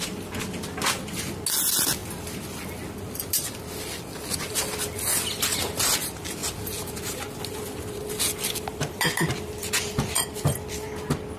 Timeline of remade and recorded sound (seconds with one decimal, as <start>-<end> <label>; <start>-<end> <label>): 0.0-8.7 recorded; 8.7-9.3 remade; 9.3-11.4 recorded